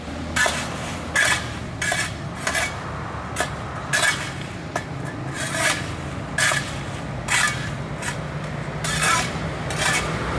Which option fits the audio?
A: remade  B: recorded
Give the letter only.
B